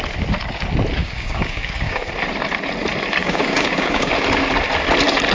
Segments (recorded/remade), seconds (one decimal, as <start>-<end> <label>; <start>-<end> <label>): 0.0-1.0 recorded; 1.0-2.1 remade; 2.1-3.2 recorded; 3.2-4.1 remade; 4.1-5.3 recorded